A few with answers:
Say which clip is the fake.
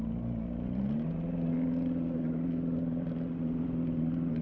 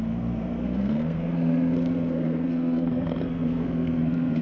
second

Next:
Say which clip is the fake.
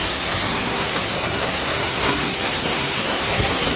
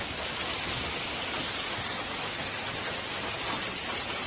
first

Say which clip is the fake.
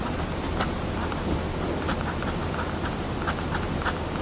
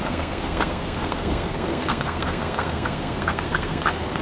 second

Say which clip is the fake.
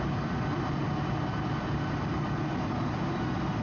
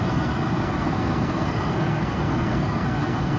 second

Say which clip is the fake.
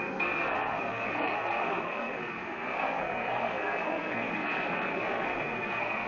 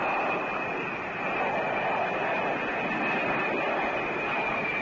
first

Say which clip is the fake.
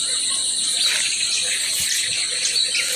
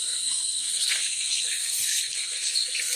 second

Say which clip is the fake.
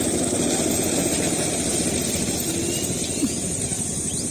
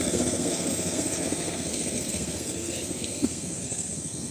second